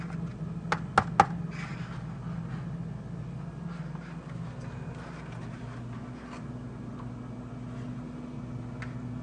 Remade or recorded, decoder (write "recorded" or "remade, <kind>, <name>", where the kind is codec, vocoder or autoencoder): recorded